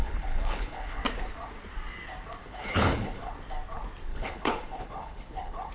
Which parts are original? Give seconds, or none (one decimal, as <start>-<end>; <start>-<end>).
1.0-2.4; 3.3-4.1